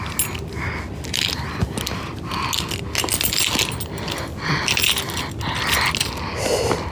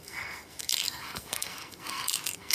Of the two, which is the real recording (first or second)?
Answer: first